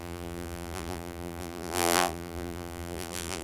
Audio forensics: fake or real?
fake